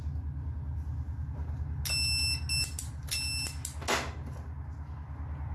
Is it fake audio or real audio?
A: real